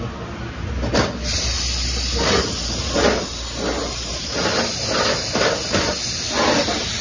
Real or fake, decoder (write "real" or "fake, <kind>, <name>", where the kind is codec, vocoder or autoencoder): real